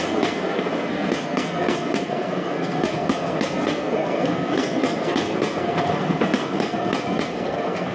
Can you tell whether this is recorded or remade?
remade